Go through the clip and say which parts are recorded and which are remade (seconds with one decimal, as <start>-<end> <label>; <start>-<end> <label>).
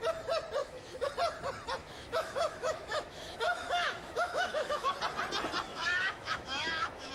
0.0-0.6 recorded; 0.6-1.1 remade; 1.1-1.8 recorded; 1.8-4.9 remade; 4.9-5.7 recorded; 5.7-7.1 remade